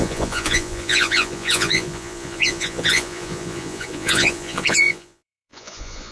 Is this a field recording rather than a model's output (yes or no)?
no